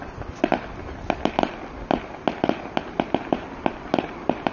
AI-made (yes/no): no